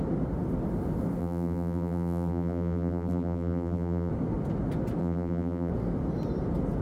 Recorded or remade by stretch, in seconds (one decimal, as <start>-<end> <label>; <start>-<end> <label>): 0.0-1.2 recorded; 1.2-4.1 remade; 4.1-5.0 recorded; 5.0-5.7 remade; 5.7-6.8 recorded